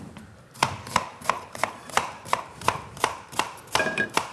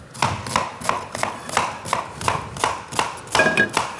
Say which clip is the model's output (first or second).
first